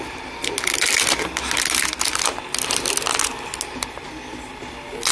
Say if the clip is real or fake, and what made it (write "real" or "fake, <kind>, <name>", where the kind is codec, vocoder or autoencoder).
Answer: real